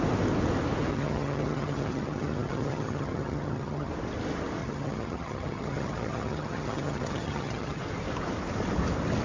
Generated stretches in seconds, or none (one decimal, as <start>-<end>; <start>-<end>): 0.9-3.9; 4.6-7.8